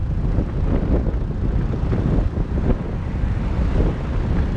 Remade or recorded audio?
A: recorded